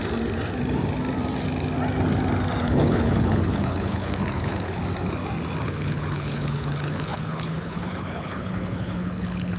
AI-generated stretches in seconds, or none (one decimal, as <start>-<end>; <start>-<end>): 2.6-4.8; 5.6-9.6